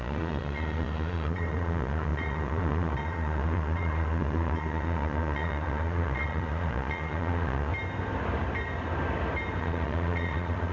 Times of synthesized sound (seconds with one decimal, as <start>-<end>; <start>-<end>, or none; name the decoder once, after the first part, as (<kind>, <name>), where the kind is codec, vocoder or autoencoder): 0.0-7.7 (vocoder, Vocos); 9.6-10.7

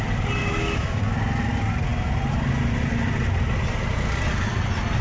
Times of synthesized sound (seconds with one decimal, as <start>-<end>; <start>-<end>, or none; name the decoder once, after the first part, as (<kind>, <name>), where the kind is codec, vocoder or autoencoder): 0.4-1.0 (autoencoder, DAC-VAE)

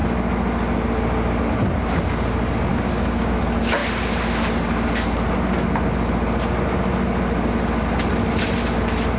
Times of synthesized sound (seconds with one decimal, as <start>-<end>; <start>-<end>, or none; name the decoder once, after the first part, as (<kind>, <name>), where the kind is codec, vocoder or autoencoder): 2.7-3.4 (codec, DAC)

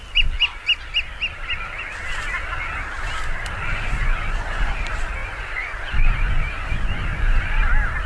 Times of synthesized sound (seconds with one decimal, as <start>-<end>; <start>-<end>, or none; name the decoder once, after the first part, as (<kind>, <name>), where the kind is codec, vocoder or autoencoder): 3.7-4.7 (vocoder, Vocos); 5.2-7.6

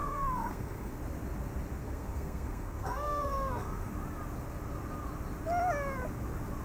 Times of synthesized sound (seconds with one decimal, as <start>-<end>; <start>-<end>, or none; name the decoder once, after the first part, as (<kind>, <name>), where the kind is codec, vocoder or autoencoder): 0.0-1.0 (codec, SNAC); 1.8-3.9